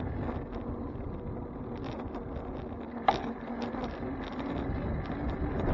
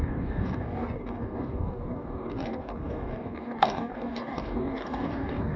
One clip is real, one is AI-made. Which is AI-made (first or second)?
second